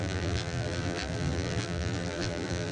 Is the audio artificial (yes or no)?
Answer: yes